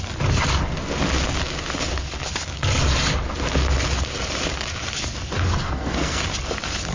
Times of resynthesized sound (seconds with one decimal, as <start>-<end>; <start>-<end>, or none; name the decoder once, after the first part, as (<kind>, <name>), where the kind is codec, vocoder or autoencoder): 5.6-6.2 (codec, SNAC)